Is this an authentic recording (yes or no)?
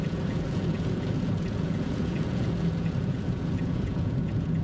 no